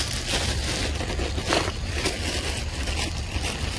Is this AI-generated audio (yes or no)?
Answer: no